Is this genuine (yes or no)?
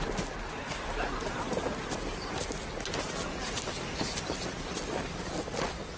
yes